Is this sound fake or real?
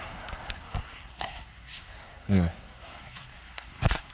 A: fake